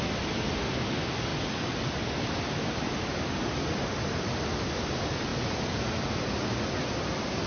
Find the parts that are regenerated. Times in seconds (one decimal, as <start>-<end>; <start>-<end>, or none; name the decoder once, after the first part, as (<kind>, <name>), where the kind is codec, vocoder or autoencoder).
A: none